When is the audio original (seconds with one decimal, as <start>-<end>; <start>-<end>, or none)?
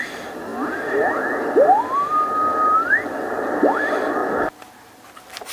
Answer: 0.0-5.5